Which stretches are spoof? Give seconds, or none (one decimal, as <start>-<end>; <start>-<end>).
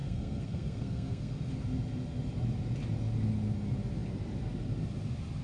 0.0-1.5